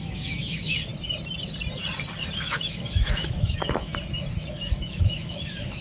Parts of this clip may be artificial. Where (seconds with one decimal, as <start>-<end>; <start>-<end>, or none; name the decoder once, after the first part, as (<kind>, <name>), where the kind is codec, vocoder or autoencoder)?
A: 0.0-0.9 (autoencoder, DAC-VAE); 2.3-3.9; 4.5-5.8